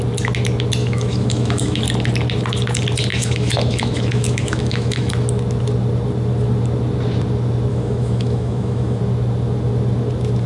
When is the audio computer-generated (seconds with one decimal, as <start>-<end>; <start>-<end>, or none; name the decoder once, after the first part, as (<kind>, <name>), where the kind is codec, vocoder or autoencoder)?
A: 0.8-1.8 (autoencoder, DAC-VAE); 3.1-5.1; 7.7-9.0